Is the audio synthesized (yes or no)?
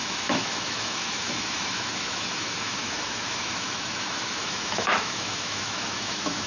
yes